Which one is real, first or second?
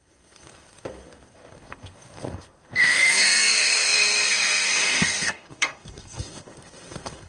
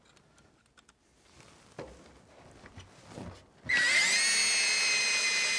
second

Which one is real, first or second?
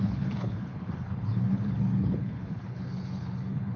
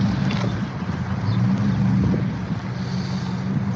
second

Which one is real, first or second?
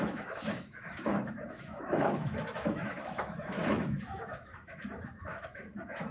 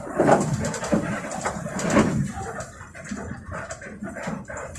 second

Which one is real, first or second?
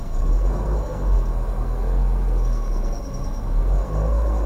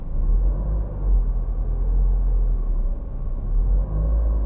second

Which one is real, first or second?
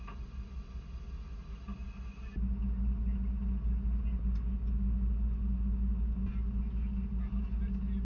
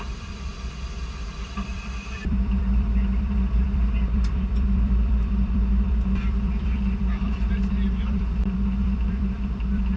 first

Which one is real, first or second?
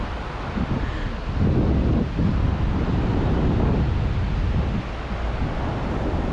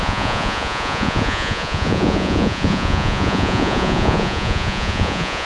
first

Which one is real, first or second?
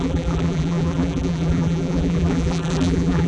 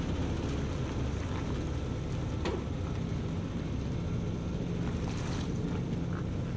second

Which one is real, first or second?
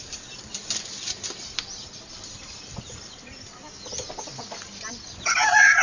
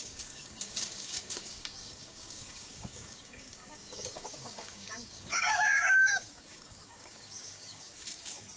first